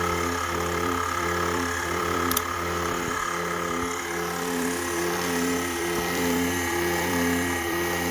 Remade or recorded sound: remade